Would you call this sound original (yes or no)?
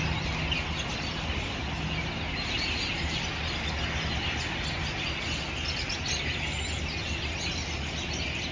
yes